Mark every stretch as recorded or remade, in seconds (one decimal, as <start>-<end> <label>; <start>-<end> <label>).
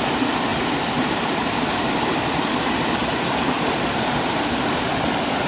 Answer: 0.0-0.5 recorded; 0.5-2.0 remade; 2.0-3.0 recorded; 3.0-5.5 remade